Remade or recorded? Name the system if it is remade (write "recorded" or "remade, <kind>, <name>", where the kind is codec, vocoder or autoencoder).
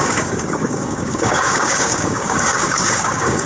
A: remade, codec, DAC